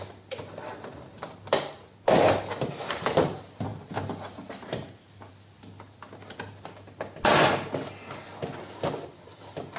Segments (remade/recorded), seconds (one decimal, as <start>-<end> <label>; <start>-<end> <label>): 0.0-9.8 recorded

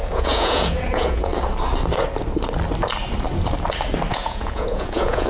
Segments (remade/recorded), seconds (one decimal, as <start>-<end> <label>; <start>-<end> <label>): 0.0-1.3 remade; 1.3-4.1 recorded; 4.1-5.3 remade

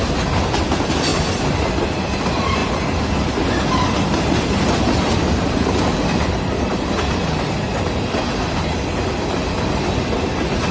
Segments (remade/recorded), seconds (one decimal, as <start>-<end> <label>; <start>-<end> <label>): 0.0-10.7 recorded

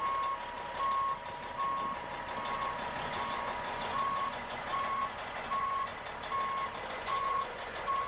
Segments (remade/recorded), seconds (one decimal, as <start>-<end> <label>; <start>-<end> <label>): 0.0-2.5 recorded; 2.5-5.9 remade; 5.9-6.9 recorded; 6.9-8.1 remade

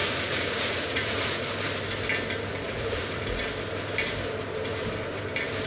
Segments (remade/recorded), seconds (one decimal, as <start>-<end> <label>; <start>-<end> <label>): 0.0-1.5 remade; 1.5-2.5 recorded; 2.5-3.4 remade; 3.4-5.7 recorded

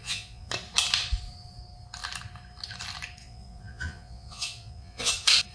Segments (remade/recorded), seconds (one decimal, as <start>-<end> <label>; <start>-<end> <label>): 0.0-0.5 remade; 0.5-3.2 recorded; 3.2-5.1 remade; 5.1-5.5 recorded

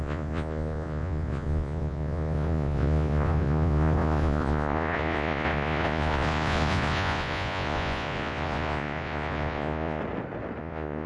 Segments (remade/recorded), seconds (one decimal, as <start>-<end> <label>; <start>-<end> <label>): 0.0-10.0 remade; 10.0-10.6 recorded; 10.6-11.1 remade

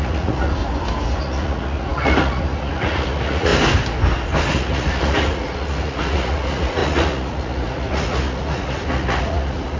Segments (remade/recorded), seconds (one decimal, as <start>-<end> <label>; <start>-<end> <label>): 0.0-0.6 remade; 0.6-1.2 recorded; 1.2-3.5 remade; 3.5-4.5 recorded; 4.5-9.8 remade